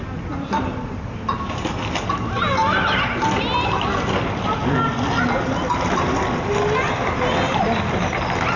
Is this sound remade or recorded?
recorded